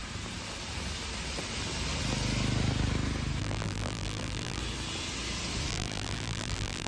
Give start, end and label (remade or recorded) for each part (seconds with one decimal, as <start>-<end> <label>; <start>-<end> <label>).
0.0-3.4 recorded; 3.4-4.6 remade; 4.6-5.7 recorded; 5.7-6.9 remade